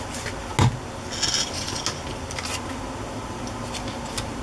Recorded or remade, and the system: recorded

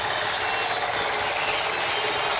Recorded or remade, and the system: recorded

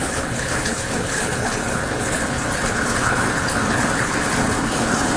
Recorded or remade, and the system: remade, codec, HILCodec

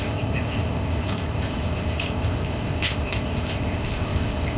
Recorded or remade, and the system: remade, codec, ZipCodec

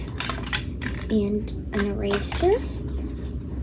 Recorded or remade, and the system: recorded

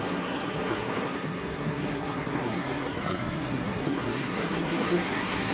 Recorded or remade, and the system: remade, codec, SNAC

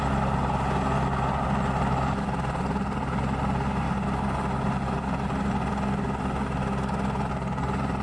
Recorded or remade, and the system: recorded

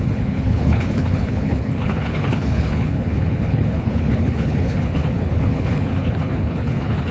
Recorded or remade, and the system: remade, codec, HILCodec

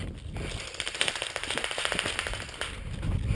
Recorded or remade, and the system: recorded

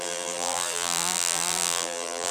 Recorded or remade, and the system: remade, vocoder, BigVGAN v2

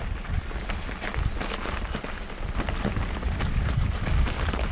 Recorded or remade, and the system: recorded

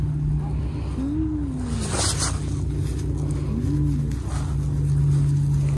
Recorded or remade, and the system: recorded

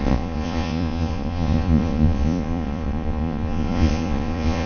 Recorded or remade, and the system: remade, vocoder, Vocos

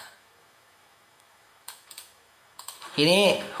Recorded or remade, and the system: remade, autoencoder, DAC-VAE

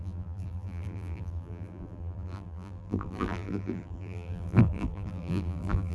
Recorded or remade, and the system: remade, vocoder, BigVGAN v2